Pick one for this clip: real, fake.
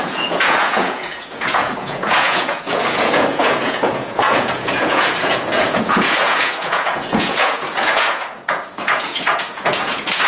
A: fake